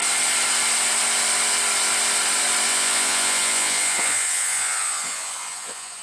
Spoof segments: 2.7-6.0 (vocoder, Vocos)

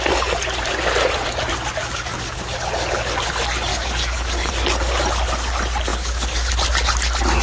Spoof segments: 1.8-2.4 (codec, DAC); 3.7-4.5; 5.9-6.5